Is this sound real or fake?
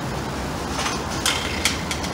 real